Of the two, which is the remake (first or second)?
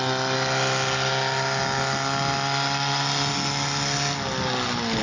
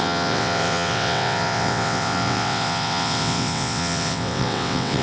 second